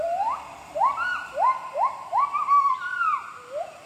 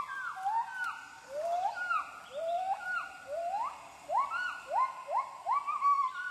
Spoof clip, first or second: first